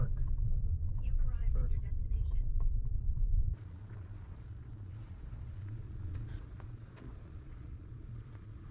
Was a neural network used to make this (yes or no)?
yes